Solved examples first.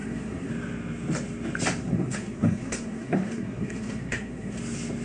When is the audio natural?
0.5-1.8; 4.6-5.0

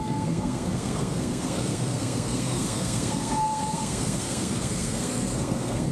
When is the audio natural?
none